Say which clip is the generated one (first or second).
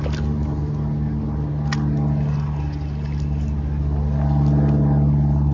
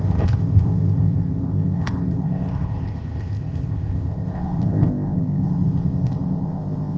second